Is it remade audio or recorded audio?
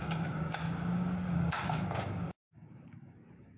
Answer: remade